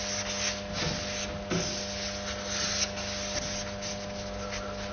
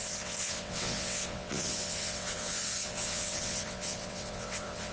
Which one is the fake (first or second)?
second